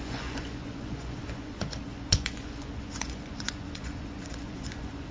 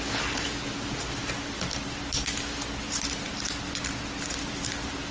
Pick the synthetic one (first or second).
first